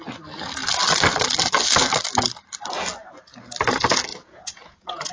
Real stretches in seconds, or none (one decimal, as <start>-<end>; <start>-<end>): 0.0-4.1

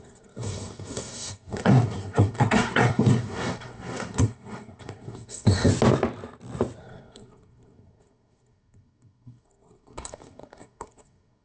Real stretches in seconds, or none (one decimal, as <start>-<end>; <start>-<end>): 5.7-6.8